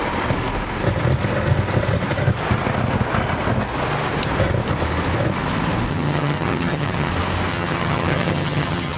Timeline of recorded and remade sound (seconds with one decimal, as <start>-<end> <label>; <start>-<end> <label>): 0.0-5.9 recorded; 5.9-7.1 remade; 7.1-7.5 recorded; 7.5-9.0 remade